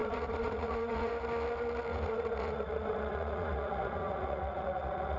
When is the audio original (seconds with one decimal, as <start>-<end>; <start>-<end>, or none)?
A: 1.1-1.9